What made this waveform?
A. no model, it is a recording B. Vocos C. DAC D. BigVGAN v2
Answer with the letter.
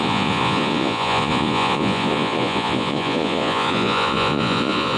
B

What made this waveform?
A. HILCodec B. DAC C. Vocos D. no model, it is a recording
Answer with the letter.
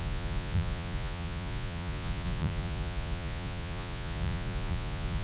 C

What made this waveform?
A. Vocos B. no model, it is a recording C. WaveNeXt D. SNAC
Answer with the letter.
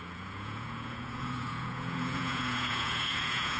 A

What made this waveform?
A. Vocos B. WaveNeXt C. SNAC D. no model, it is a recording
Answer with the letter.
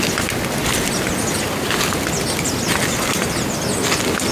D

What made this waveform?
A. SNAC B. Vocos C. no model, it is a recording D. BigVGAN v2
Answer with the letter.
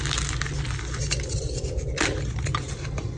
C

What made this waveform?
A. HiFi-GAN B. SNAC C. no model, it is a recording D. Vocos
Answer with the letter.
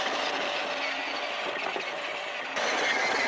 C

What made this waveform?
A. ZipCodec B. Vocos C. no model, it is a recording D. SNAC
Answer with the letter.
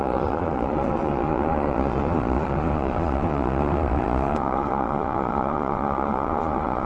B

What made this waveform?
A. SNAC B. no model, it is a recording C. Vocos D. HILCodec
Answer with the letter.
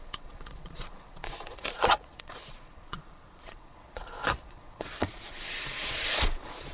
C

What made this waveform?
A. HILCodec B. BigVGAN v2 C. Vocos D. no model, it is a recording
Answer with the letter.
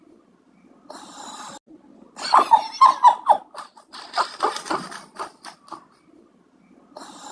D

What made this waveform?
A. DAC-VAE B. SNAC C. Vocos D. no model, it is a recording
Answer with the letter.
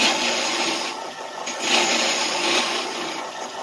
C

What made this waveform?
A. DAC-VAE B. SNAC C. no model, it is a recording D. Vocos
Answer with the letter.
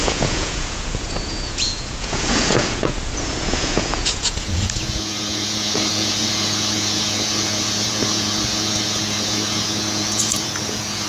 D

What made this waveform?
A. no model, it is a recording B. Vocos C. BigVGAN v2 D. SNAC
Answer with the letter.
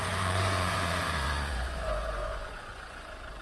B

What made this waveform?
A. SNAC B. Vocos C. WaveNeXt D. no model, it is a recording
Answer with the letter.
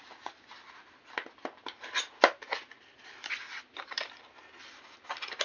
D